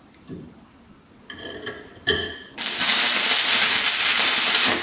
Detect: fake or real fake